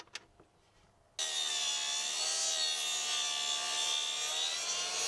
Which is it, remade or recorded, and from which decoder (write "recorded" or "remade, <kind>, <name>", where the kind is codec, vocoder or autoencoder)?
recorded